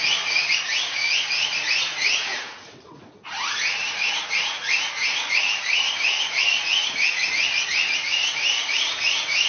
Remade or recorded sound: remade